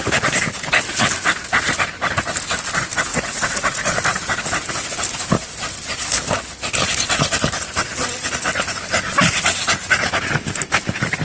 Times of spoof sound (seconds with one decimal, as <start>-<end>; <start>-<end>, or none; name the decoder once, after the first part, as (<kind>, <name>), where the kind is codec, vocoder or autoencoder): 3.1-3.9 (vocoder, Vocos)